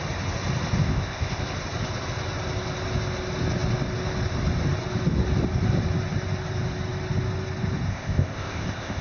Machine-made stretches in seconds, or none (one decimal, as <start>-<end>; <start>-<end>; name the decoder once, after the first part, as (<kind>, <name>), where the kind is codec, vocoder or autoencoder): 0.8-1.4 (codec, ZipCodec); 7.9-9.0